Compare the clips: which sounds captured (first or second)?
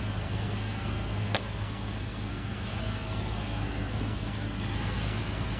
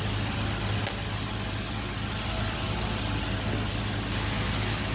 second